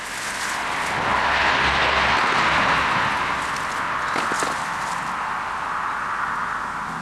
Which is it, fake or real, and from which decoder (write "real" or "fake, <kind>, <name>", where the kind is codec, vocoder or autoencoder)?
real